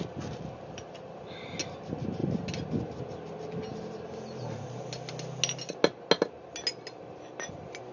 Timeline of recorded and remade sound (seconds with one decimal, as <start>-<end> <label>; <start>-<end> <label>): 0.0-7.9 recorded